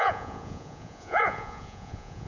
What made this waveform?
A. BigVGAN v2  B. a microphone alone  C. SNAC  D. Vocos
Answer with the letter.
D